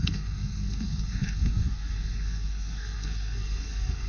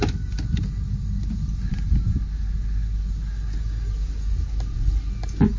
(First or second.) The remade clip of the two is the first